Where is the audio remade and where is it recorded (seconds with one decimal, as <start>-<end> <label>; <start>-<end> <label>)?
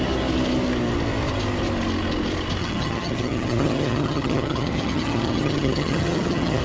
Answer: 0.0-2.6 recorded; 2.6-6.6 remade